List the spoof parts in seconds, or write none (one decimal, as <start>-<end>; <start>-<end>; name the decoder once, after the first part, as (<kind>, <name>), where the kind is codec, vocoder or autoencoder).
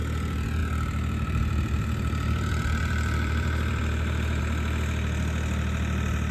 0.6-4.4 (vocoder, BigVGAN v2)